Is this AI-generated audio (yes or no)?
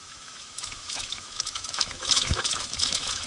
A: yes